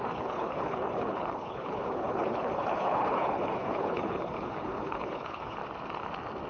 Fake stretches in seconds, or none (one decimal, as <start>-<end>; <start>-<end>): 0.0-5.6